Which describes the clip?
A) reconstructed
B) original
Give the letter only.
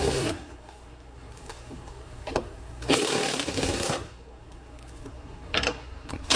A